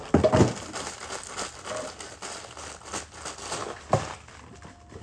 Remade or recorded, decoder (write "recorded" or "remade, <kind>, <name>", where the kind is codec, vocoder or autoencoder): recorded